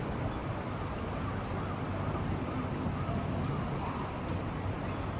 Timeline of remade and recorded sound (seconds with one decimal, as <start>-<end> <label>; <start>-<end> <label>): 0.0-5.2 recorded